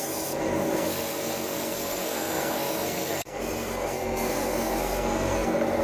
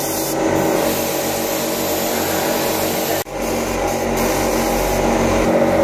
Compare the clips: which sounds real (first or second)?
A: second